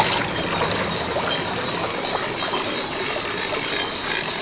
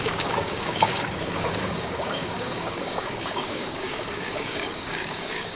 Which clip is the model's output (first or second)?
second